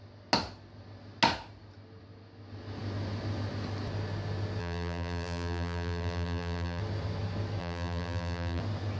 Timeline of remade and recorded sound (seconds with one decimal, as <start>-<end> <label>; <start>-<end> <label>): 0.0-4.6 recorded; 4.6-6.8 remade; 6.8-7.6 recorded; 7.6-8.6 remade; 8.6-9.0 recorded